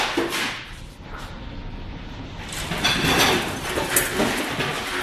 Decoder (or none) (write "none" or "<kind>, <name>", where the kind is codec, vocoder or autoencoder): none